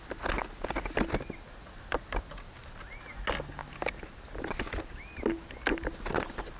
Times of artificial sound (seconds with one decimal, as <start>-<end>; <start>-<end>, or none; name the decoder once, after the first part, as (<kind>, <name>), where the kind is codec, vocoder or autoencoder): none